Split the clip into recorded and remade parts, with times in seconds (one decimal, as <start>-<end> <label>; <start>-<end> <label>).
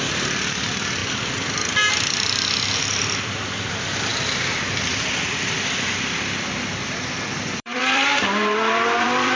0.0-1.0 remade; 1.0-2.1 recorded; 2.1-9.4 remade